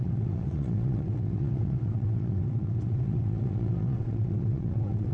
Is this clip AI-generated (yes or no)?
yes